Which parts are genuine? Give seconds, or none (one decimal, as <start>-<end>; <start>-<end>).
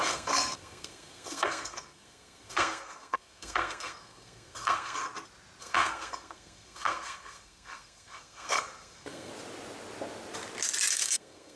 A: 5.0-5.6; 9.3-10.9